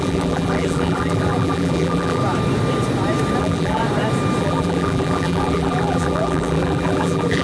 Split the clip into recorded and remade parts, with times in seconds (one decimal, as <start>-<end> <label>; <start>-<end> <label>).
0.0-2.2 remade; 2.2-3.4 recorded; 3.4-3.8 remade; 3.8-4.4 recorded; 4.4-7.4 remade